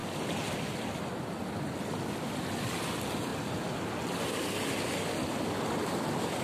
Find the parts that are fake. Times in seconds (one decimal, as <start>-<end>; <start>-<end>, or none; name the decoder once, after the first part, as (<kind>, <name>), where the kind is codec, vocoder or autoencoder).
none